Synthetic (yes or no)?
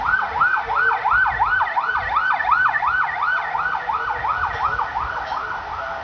no